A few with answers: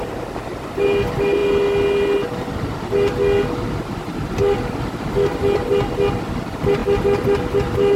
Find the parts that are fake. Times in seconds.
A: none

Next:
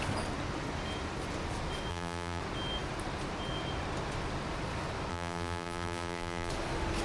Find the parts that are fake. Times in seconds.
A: 1.9-2.4 (vocoder, BigVGAN v2); 5.1-6.5

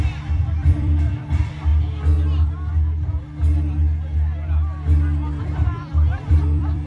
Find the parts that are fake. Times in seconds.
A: 0.0-1.7 (vocoder, BigVGAN v2); 5.4-6.9

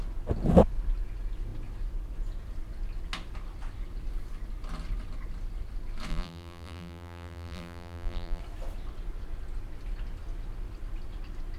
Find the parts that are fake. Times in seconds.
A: 6.1-8.4 (vocoder, BigVGAN v2)

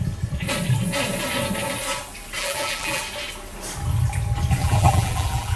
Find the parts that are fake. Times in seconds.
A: 2.4-3.0 (vocoder, BigVGAN v2); 4.6-5.6

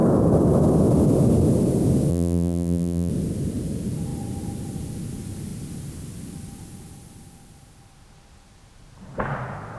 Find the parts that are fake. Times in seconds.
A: 2.1-3.1 (vocoder, BigVGAN v2)

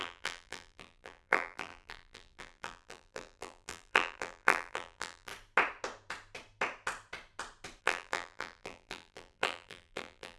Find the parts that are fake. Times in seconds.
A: 0.0-5.3 (vocoder, BigVGAN v2); 7.8-10.4